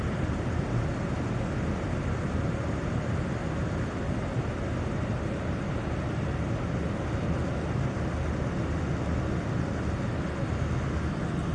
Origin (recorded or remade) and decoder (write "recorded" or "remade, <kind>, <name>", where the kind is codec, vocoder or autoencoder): recorded